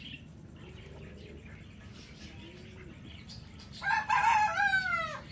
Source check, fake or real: real